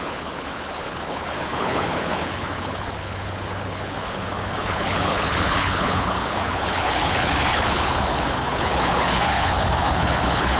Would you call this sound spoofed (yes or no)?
yes